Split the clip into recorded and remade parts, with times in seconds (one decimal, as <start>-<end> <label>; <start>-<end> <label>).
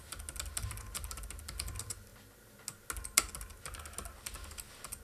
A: 0.0-5.0 recorded